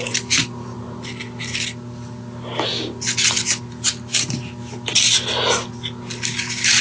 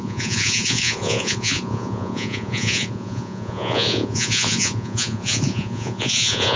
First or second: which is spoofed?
second